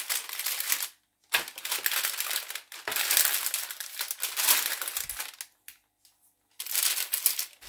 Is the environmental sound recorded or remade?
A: recorded